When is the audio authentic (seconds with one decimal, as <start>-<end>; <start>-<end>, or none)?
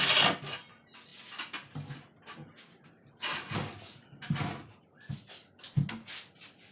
0.0-6.7